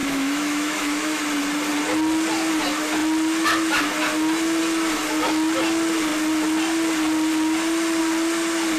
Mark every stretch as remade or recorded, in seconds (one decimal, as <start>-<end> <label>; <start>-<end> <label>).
0.0-1.2 remade; 1.2-8.8 recorded